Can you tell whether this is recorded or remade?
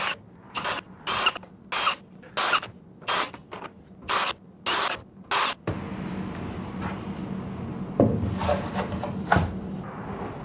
recorded